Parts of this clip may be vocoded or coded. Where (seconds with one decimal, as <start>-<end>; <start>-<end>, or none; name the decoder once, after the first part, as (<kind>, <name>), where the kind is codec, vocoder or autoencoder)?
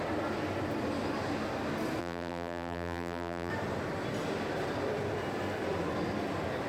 2.0-3.5 (vocoder, BigVGAN v2)